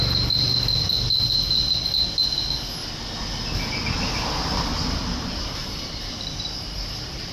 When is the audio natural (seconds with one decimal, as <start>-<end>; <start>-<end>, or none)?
0.0-5.6; 6.1-7.3